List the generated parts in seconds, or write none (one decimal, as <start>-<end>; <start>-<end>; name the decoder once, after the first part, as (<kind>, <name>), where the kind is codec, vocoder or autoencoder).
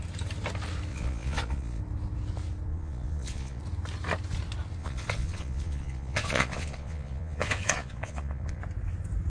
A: 0.9-1.8 (vocoder, Vocos); 2.7-3.6; 4.8-8.6